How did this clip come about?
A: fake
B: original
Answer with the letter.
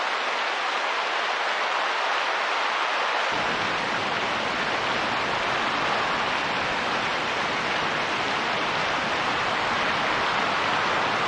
B